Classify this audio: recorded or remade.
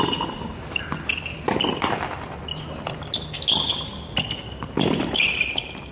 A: recorded